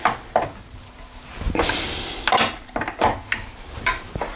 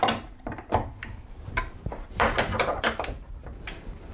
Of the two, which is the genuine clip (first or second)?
first